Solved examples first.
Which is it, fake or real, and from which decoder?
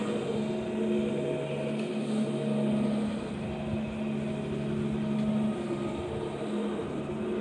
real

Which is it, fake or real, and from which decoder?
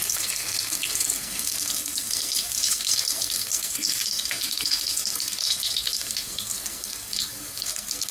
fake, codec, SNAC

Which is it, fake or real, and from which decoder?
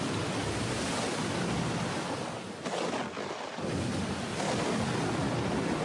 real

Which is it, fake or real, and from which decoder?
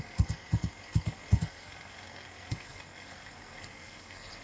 fake, codec, SNAC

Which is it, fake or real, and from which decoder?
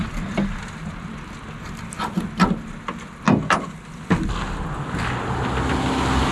real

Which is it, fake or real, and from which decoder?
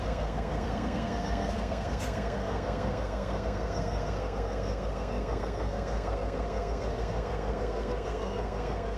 fake, codec, SNAC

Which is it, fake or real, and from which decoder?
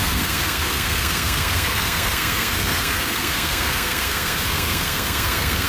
fake, codec, SNAC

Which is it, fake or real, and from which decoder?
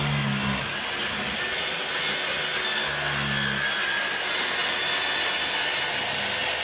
real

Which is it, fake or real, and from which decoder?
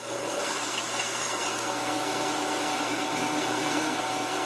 fake, codec, SNAC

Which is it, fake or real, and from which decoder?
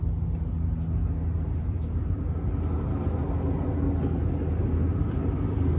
real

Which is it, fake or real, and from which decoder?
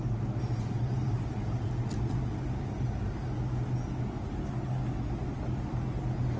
real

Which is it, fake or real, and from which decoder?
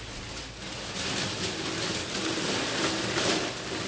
real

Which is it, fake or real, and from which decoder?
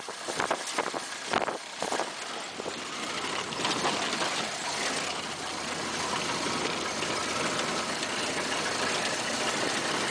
real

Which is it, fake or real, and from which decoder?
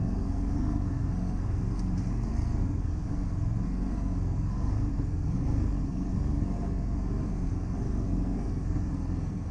fake, codec, SNAC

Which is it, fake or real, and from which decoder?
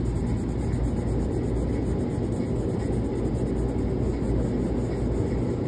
real